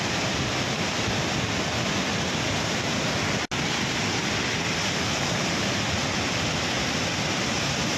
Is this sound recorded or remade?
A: recorded